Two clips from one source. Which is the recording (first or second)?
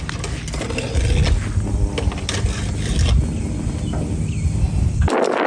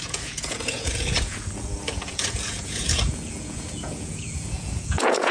first